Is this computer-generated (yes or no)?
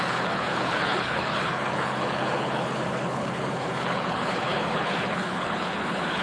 yes